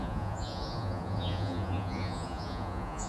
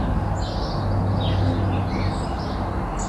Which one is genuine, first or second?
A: second